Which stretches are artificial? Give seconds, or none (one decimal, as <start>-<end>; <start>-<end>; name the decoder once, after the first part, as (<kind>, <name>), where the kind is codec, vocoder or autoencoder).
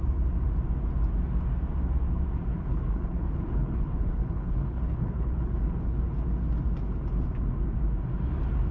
2.5-6.0 (codec, HILCodec)